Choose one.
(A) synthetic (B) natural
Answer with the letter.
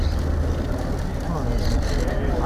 B